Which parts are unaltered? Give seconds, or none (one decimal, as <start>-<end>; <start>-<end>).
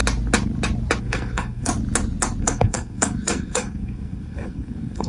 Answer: 0.0-1.0; 1.7-2.4